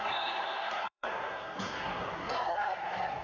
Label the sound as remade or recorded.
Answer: remade